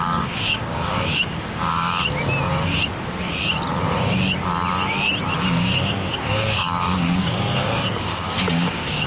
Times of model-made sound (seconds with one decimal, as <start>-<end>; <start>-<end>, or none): 0.0-1.9; 5.4-9.1